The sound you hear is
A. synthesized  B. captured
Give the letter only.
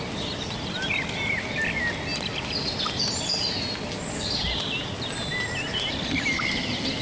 B